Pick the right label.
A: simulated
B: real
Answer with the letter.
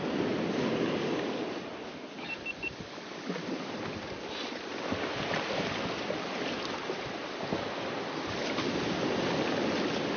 B